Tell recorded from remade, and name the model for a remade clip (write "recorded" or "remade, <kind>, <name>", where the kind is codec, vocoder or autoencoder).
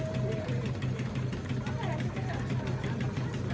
recorded